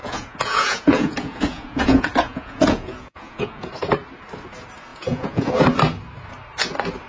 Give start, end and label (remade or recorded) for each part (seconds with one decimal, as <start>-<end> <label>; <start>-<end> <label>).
0.0-3.7 remade; 3.7-4.9 recorded; 4.9-5.5 remade; 5.5-7.1 recorded